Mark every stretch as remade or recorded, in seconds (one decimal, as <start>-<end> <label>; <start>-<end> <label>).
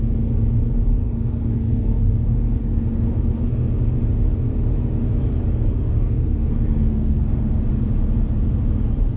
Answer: 0.0-1.0 recorded; 1.0-3.8 remade; 3.8-5.5 recorded; 5.5-7.7 remade; 7.7-9.2 recorded